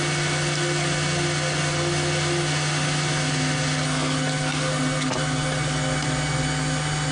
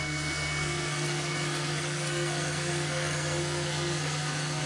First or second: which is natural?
first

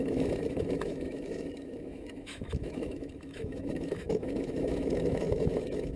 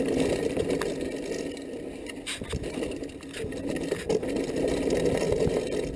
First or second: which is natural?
second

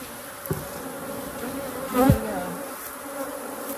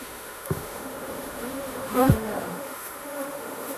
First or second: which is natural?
first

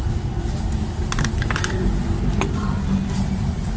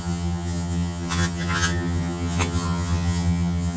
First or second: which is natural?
first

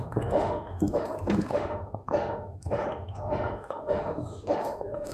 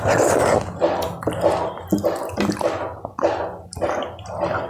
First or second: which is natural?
second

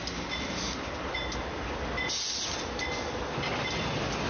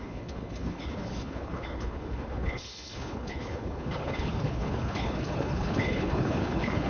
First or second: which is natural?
first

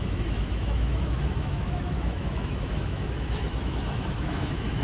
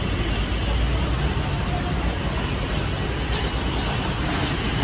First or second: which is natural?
second